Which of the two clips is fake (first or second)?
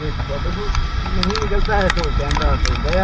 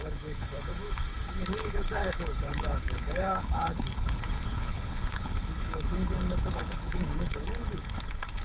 second